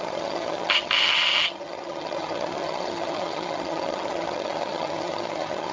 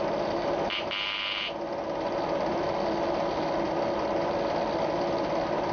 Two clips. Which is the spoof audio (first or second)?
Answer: first